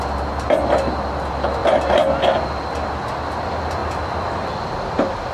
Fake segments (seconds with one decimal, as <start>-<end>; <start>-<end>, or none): none

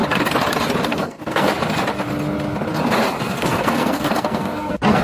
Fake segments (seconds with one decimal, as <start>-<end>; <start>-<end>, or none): 0.8-1.5; 3.2-5.0

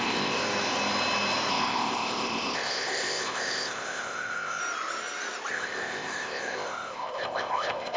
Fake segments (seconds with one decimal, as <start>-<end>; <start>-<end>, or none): 0.0-0.4; 1.5-4.6; 5.5-8.0

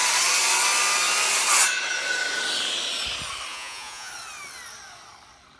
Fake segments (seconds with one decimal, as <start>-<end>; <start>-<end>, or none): 3.5-4.1

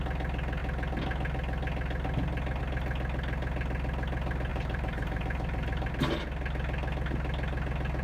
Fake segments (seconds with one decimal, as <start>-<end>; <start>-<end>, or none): 4.5-5.9

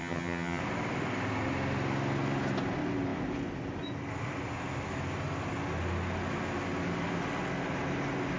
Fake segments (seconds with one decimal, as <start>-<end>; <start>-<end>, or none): 0.0-0.6

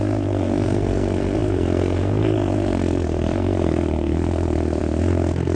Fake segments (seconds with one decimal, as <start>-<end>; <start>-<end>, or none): 0.0-5.6